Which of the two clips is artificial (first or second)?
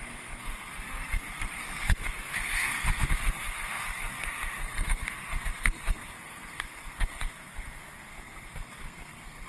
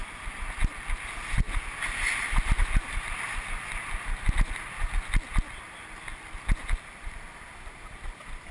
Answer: first